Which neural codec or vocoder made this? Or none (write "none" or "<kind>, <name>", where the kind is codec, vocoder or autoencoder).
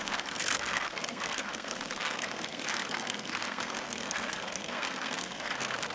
codec, SNAC